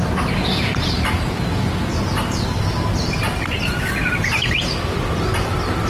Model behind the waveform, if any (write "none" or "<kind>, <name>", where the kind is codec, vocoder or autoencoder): vocoder, BigVGAN v2